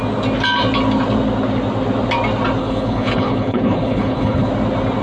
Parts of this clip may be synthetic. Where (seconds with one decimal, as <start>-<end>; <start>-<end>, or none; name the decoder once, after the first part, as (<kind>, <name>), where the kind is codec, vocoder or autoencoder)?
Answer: 2.6-4.5 (codec, HILCodec)